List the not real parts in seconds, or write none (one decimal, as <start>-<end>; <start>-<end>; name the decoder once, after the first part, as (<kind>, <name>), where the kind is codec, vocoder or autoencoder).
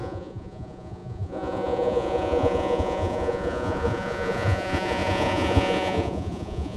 0.0-6.8 (vocoder, Vocos)